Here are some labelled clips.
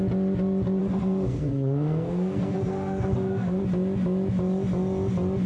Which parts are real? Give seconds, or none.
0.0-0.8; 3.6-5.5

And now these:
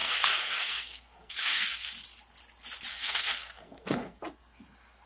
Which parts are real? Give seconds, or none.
1.9-2.9; 4.2-5.1